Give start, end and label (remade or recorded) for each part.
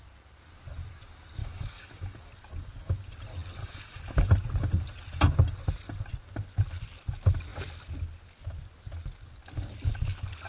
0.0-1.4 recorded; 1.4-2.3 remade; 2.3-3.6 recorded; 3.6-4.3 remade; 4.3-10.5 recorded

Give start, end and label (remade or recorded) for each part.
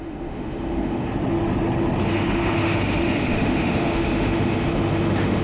0.0-1.1 remade; 1.1-2.0 recorded; 2.0-5.4 remade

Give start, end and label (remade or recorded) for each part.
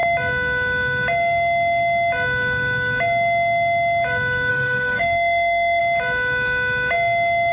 0.0-4.5 recorded; 4.5-5.8 remade; 5.8-7.5 recorded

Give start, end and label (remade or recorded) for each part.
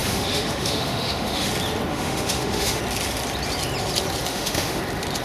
0.0-1.5 remade; 1.5-1.9 recorded; 1.9-2.8 remade; 2.8-4.3 recorded; 4.3-4.8 remade; 4.8-5.2 recorded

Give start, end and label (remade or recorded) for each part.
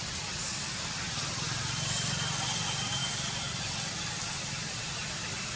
0.0-5.6 recorded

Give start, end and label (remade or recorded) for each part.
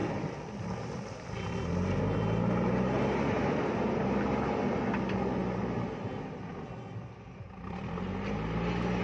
0.0-9.0 recorded